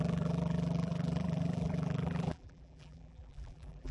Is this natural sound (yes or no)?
no